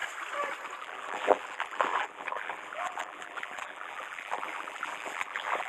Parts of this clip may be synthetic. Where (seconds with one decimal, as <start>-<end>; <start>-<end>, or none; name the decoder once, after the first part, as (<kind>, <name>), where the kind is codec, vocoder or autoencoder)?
0.8-5.7 (vocoder, BigVGAN v2)